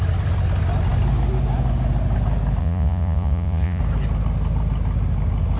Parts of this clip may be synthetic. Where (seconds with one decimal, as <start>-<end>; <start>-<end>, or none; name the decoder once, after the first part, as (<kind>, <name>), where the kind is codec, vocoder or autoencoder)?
2.6-3.8 (vocoder, Vocos)